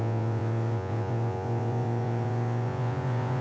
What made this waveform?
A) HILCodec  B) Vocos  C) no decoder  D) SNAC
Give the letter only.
B